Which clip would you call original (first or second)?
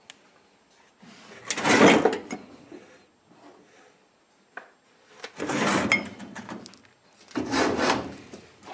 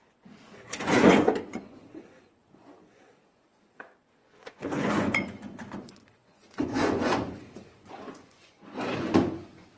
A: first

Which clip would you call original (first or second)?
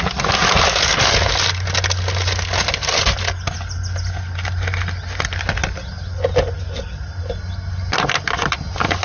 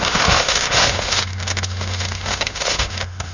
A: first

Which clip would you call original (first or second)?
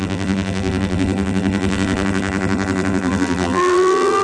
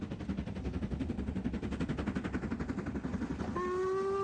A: second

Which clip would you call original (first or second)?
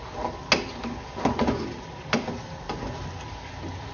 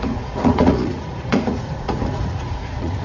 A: first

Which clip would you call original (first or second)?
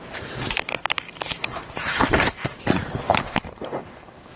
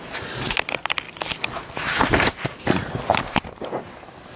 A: second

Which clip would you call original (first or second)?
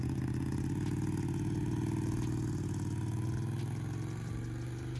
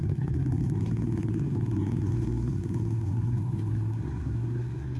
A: first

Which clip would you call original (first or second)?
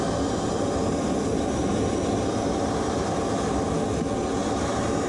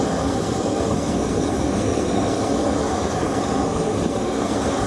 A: first